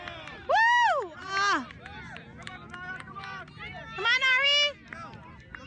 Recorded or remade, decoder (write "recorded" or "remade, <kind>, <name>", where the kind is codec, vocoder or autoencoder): recorded